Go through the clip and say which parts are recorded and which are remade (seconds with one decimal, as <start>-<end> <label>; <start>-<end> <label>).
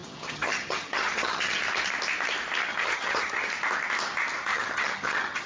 0.0-1.6 remade; 1.6-2.7 recorded; 2.7-3.5 remade; 3.5-4.5 recorded; 4.5-5.5 remade